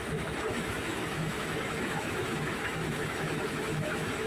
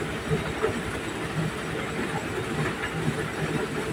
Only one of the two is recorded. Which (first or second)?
second